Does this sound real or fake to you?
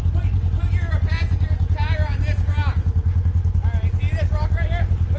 real